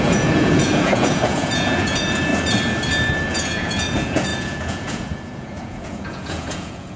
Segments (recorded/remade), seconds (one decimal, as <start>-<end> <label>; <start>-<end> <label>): 0.0-2.3 remade; 2.3-3.3 recorded; 3.3-7.0 remade